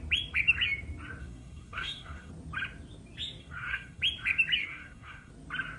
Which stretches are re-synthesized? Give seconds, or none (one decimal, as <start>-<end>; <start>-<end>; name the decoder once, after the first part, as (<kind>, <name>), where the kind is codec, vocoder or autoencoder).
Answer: 1.2-2.3 (codec, SNAC); 3.4-4.0; 4.6-5.3